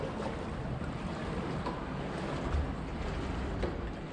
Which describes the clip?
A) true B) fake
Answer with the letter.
A